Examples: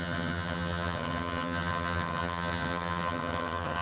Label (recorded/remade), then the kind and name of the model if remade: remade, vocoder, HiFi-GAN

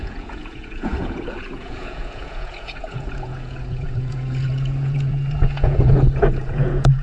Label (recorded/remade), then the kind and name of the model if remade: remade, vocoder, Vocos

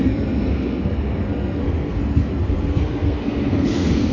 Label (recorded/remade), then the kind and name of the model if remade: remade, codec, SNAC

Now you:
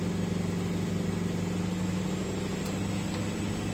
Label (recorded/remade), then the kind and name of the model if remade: recorded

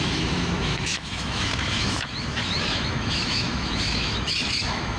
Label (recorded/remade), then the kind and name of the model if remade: remade, autoencoder, DAC-VAE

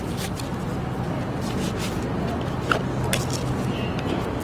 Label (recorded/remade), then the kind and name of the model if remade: recorded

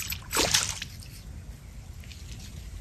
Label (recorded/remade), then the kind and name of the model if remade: recorded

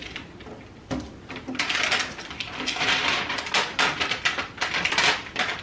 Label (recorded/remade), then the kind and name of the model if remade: recorded